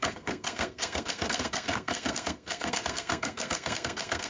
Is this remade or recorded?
remade